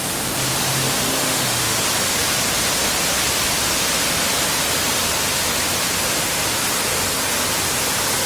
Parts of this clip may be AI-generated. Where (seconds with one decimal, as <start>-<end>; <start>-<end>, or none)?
1.2-1.8